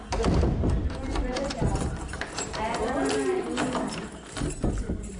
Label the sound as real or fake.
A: fake